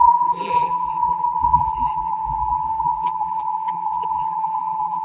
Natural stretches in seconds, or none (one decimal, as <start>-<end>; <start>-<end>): none